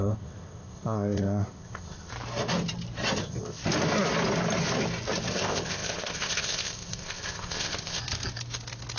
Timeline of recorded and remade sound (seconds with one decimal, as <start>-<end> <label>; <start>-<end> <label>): 0.0-2.1 remade; 2.1-3.2 recorded; 3.2-3.6 remade; 3.6-5.3 recorded; 5.3-8.0 remade; 8.0-9.0 recorded